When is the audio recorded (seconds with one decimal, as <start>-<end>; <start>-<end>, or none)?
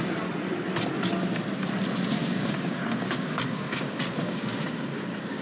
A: 0.0-2.2